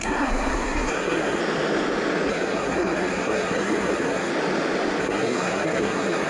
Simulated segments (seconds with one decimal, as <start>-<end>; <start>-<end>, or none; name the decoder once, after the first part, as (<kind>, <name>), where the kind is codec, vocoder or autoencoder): 0.0-1.4 (codec, SNAC); 2.3-4.3; 5.0-6.3